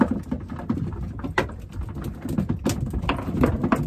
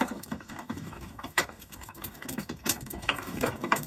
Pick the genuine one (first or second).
first